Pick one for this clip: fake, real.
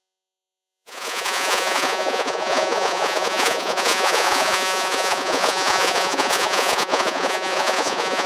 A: fake